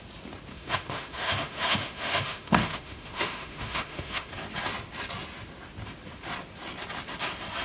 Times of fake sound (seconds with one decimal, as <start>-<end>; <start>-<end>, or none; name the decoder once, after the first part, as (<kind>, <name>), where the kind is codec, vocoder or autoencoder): 0.5-4.3 (autoencoder, DAC-VAE)